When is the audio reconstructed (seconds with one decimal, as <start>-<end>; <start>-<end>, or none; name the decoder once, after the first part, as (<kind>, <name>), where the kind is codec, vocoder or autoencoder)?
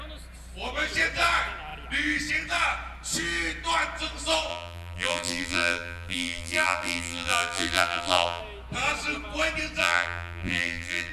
4.5-8.4 (vocoder, BigVGAN v2); 9.8-11.1